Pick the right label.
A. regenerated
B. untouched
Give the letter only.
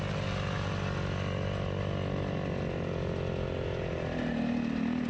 B